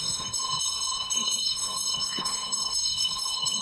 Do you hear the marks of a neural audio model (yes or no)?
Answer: yes